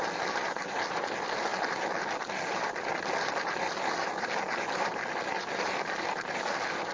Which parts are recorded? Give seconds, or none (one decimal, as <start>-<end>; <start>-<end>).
0.0-6.9